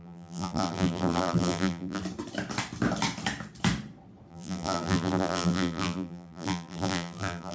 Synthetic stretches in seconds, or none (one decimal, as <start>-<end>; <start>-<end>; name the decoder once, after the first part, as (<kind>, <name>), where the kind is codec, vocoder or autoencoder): 0.0-2.0 (vocoder, BigVGAN v2); 4.3-7.5